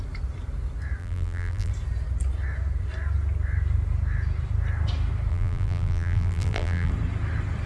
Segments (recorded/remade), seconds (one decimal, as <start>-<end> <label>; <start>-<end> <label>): 0.0-1.0 recorded; 1.0-1.7 remade; 1.7-5.3 recorded; 5.3-6.9 remade; 6.9-7.7 recorded